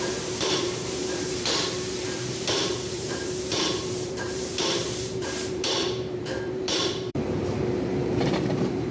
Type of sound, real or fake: fake